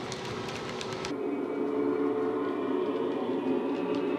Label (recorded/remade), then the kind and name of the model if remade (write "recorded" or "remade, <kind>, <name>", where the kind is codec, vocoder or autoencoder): recorded